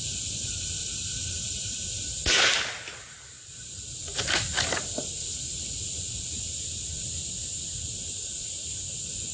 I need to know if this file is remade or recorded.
recorded